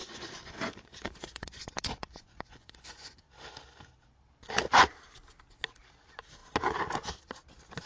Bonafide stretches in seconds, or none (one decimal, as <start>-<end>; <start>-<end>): 3.2-7.9